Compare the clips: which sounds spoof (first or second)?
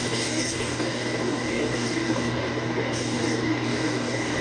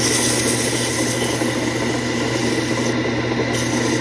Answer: first